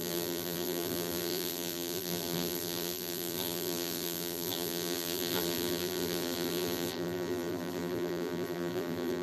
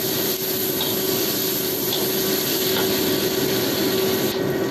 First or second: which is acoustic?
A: second